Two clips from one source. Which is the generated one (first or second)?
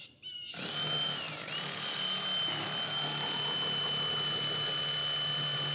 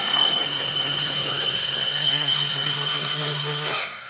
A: second